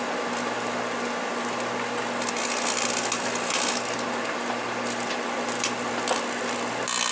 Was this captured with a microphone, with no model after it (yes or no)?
yes